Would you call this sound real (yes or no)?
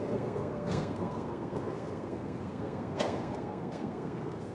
no